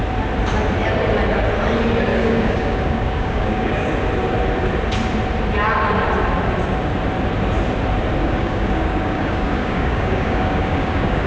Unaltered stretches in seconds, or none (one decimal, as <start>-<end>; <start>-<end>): 0.0-2.1; 3.9-8.2